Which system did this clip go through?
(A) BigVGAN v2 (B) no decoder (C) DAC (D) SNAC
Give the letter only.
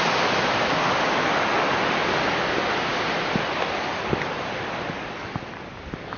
B